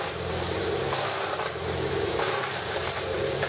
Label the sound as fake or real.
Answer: fake